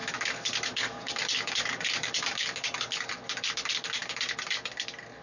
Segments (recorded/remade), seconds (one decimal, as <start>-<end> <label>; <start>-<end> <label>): 0.0-3.1 remade; 3.1-5.2 recorded